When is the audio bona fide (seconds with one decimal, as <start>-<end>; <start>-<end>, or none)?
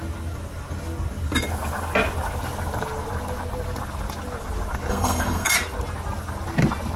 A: 0.0-4.9; 5.5-7.0